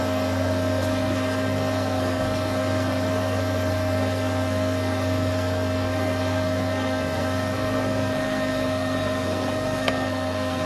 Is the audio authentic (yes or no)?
no